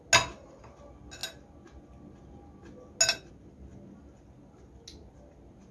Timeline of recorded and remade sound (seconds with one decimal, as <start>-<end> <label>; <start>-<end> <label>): 0.0-5.7 recorded